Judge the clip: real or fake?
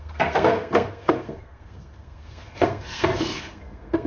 fake